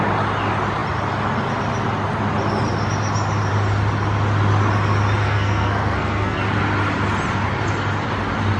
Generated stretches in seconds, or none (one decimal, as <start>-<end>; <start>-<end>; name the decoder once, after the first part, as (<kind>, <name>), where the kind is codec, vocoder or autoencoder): 5.2-6.4 (codec, SNAC)